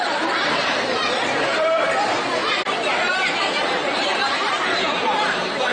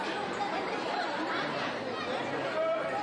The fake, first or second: first